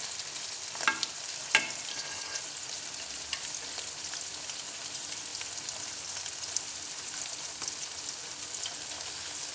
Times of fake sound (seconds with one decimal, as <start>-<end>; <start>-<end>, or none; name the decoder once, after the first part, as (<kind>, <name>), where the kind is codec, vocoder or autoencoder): 1.9-2.4 (codec, HILCodec)

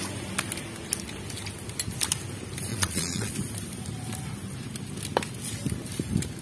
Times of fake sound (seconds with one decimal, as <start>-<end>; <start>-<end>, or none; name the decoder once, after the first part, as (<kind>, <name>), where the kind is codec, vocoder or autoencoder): 2.7-3.3 (vocoder, Vocos)

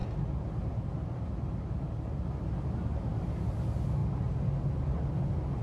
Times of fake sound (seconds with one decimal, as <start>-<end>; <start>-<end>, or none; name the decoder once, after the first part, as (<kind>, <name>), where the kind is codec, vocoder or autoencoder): none

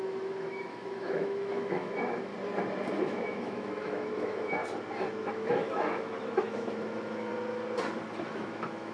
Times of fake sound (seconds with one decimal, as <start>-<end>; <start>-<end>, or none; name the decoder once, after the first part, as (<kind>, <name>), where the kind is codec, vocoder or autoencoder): 0.0-2.3 (autoencoder, DAC-VAE); 3.0-4.6; 5.3-7.3; 8.2-8.9

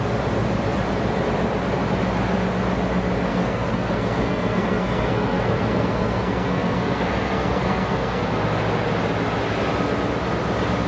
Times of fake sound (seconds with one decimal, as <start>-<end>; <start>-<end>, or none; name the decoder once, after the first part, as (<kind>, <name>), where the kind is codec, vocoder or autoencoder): 3.3-8.3 (codec, SNAC)

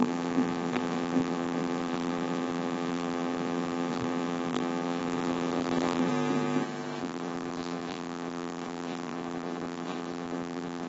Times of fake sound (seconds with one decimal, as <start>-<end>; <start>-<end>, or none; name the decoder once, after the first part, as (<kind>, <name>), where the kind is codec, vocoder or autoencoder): 0.0-6.1 (vocoder, BigVGAN v2); 7.0-10.9